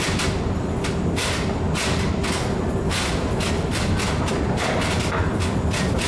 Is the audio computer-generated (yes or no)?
no